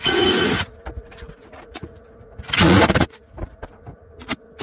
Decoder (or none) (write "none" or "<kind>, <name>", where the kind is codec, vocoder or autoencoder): vocoder, Vocos